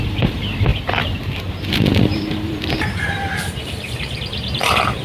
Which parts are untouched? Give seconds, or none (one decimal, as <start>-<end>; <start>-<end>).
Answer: 0.7-1.7